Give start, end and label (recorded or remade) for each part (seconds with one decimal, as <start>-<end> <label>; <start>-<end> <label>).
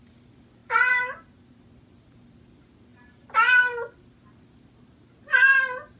0.0-6.0 recorded